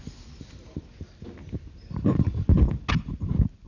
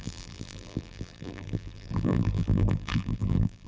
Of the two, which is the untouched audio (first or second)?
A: first